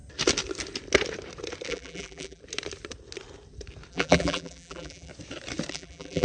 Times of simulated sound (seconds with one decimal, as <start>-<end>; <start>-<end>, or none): 1.7-2.4; 3.9-5.1; 5.7-6.2